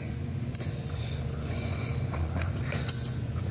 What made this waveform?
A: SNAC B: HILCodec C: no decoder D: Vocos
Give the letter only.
D